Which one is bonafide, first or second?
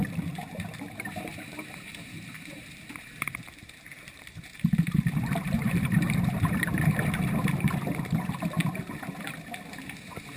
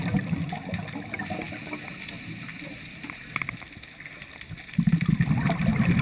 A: second